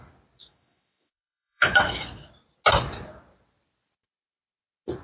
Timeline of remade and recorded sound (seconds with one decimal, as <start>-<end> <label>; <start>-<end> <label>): 0.0-0.4 recorded; 0.4-2.3 remade; 2.3-5.0 recorded